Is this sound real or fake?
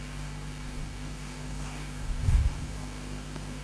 fake